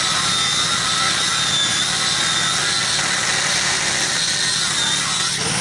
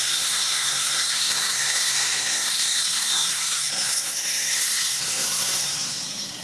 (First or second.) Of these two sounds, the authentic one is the first